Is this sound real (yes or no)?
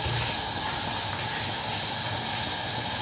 yes